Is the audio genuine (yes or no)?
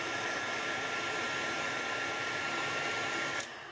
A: no